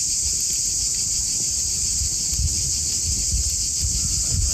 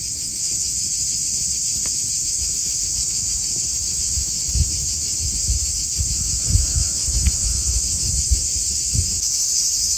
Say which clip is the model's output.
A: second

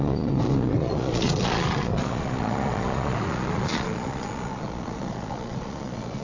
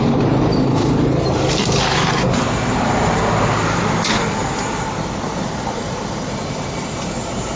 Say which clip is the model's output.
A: first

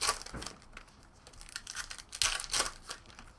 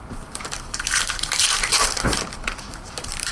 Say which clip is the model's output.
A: second